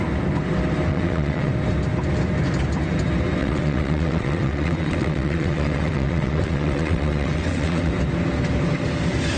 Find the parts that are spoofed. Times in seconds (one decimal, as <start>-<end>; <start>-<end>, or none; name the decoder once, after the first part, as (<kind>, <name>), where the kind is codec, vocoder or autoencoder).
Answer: 0.9-1.5 (vocoder, WaveNeXt); 3.4-7.9